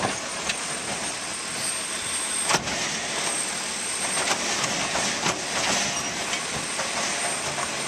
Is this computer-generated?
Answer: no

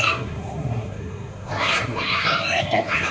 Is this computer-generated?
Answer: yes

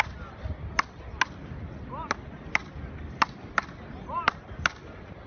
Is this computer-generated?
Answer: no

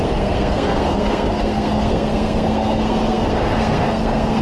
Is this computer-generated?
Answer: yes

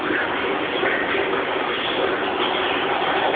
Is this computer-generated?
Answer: no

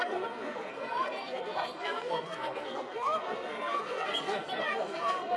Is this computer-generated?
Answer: yes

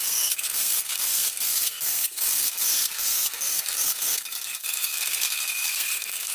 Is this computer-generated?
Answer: yes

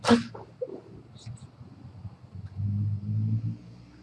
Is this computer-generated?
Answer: no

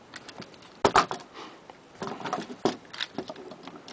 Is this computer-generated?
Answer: no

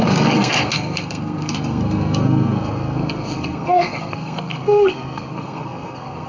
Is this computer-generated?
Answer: yes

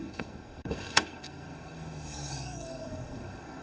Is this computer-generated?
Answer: yes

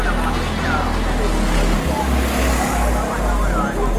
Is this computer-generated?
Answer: no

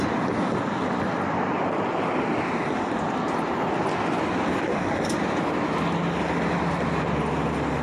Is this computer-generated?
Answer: no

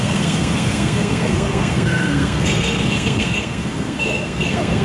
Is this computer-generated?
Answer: yes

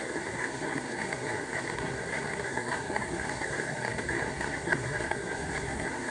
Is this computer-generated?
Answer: yes